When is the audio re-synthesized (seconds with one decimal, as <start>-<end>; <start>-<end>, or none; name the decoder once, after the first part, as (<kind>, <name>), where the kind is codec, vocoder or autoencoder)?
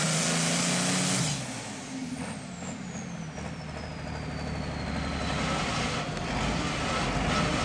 none